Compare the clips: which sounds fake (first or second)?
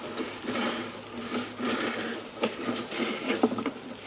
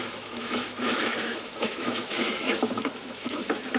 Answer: second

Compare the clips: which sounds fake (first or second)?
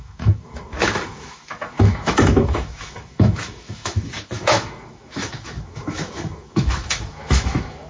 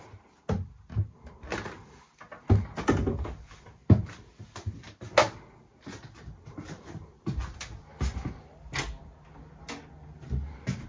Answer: first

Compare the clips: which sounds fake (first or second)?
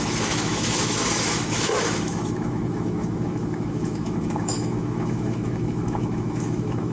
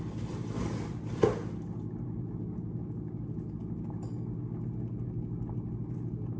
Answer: first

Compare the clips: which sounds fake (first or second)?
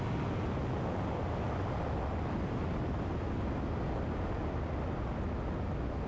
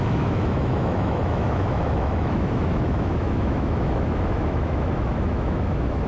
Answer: second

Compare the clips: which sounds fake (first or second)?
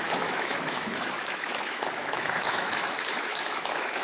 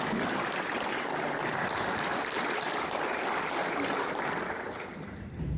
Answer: first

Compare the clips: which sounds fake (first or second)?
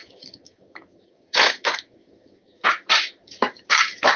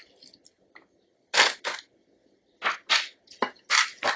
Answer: first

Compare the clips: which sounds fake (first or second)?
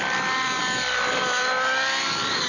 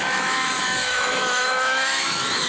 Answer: second